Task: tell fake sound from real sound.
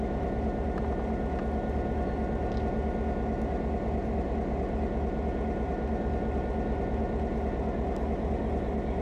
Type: real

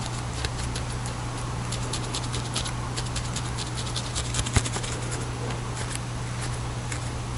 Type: real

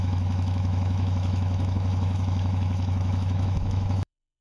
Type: fake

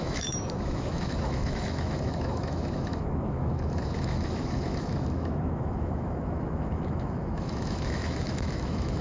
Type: fake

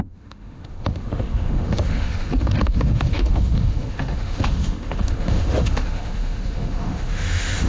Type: fake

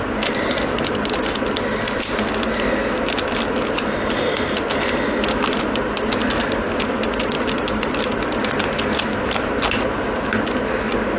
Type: real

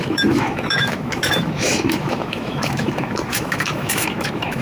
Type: fake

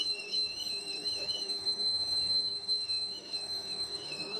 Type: fake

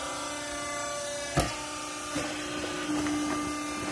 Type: real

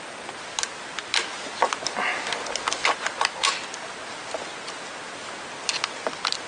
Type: real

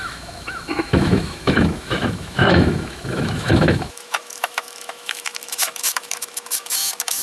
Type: fake